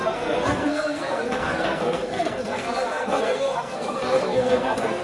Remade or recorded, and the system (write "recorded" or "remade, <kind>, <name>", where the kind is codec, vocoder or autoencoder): remade, codec, SNAC